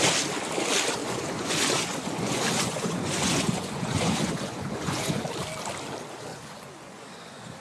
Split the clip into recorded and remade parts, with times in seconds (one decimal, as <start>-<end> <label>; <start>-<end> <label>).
0.0-1.0 recorded; 1.0-5.2 remade; 5.2-6.3 recorded; 6.3-7.6 remade